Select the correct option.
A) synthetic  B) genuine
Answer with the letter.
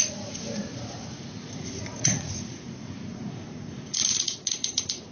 A